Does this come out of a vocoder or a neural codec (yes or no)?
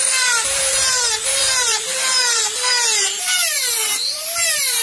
yes